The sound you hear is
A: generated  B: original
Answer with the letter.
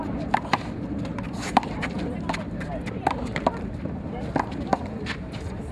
A